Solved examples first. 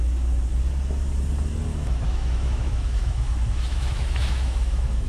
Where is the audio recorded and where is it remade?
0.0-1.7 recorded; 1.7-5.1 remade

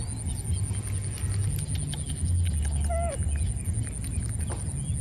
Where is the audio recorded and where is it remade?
0.0-5.0 recorded

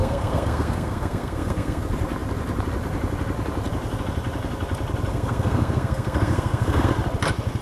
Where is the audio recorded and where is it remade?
0.0-1.8 remade; 1.8-5.1 recorded; 5.1-6.9 remade; 6.9-7.6 recorded